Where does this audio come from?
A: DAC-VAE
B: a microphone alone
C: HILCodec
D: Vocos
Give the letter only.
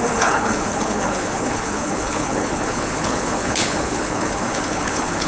C